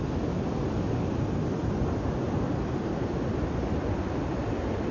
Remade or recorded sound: recorded